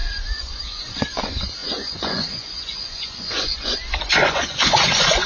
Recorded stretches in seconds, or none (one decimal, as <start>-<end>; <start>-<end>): none